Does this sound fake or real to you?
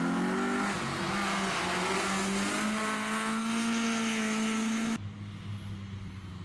real